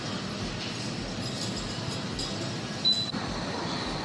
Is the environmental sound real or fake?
real